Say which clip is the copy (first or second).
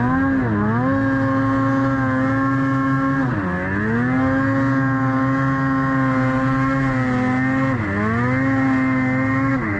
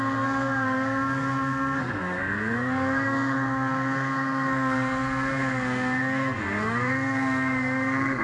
second